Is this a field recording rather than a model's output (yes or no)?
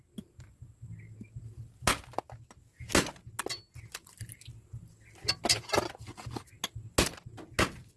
yes